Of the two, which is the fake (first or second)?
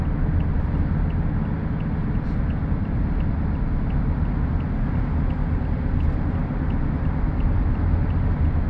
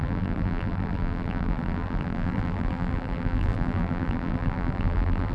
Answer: second